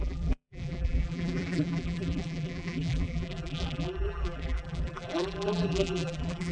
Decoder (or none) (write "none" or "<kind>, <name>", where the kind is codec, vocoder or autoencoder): vocoder, BigVGAN v2